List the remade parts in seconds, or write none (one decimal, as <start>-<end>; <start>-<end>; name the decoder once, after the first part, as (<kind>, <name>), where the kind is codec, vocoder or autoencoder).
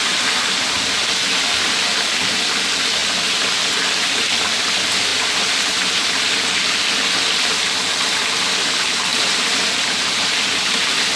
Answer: 5.1-6.1 (vocoder, BigVGAN v2); 9.1-10.5